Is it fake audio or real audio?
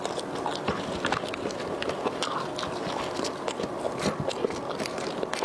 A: real